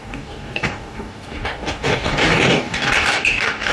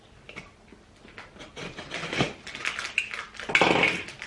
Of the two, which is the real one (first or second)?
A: second